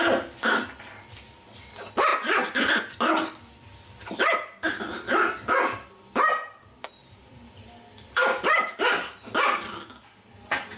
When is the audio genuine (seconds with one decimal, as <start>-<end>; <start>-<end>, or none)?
0.0-2.1; 2.9-4.7; 6.2-7.0; 8.9-10.8